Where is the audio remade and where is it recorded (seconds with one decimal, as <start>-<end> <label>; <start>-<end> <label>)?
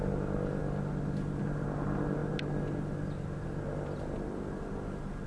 0.0-5.3 recorded